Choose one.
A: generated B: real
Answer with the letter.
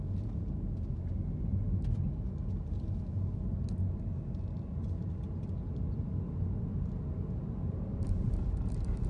B